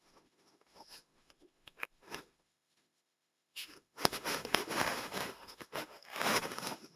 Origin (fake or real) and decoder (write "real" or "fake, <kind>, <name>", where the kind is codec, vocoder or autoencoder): fake, autoencoder, DAC-VAE